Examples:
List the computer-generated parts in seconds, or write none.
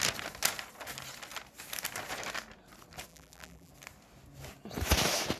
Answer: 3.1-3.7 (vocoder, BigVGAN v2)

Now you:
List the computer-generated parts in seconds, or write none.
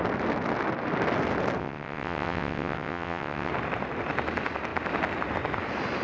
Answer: 1.6-3.5 (vocoder, WaveNeXt)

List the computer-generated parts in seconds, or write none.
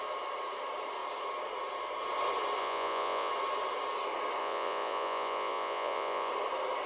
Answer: 2.6-3.3 (vocoder, Vocos); 4.4-6.3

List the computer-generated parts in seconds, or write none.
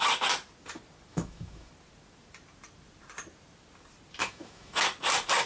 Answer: 1.1-1.7 (autoencoder, DAC-VAE); 4.2-4.8